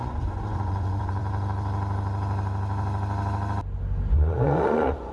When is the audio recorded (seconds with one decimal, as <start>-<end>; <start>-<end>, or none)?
1.2-4.1